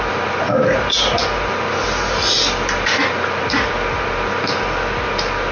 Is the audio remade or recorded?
recorded